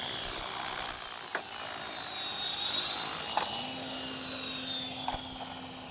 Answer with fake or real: real